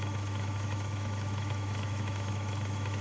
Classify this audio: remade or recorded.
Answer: remade